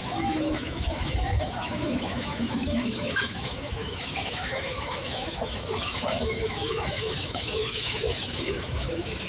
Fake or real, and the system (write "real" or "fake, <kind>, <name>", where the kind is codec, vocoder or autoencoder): fake, autoencoder, DAC-VAE